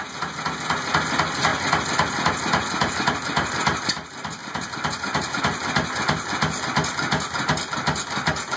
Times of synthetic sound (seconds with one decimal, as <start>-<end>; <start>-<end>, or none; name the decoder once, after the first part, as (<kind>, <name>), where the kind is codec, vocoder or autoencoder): 4.4-5.4 (vocoder, BigVGAN v2)